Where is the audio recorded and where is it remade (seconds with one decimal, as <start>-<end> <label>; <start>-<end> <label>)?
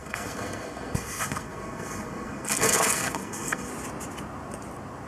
0.0-3.7 remade; 3.7-5.1 recorded